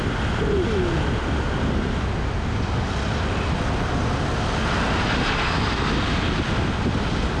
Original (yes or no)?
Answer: yes